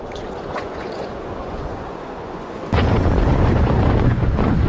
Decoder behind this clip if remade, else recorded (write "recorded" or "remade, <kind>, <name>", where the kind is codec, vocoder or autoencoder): remade, vocoder, Vocos